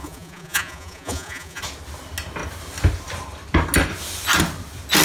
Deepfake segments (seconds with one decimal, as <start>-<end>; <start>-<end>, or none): 0.0-1.6